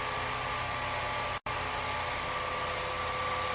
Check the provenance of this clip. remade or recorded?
recorded